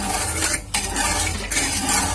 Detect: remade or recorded recorded